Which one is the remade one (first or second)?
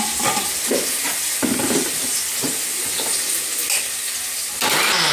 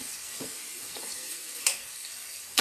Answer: second